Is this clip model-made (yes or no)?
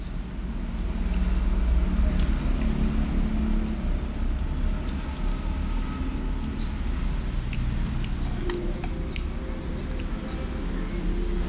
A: no